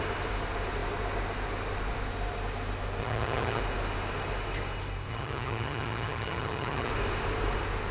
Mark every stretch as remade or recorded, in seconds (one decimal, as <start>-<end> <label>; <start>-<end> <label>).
0.0-3.0 recorded; 3.0-3.6 remade; 3.6-5.1 recorded; 5.1-6.9 remade; 6.9-7.9 recorded